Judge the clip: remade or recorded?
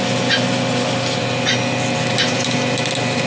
recorded